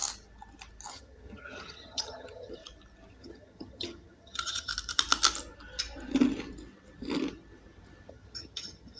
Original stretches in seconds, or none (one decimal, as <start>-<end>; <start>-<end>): 0.0-0.9; 2.6-3.1; 4.7-8.1